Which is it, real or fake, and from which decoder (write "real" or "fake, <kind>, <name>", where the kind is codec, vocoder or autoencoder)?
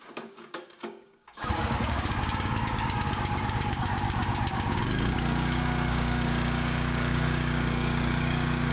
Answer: fake, codec, DAC